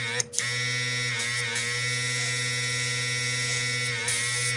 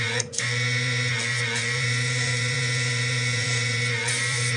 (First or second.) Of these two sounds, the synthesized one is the second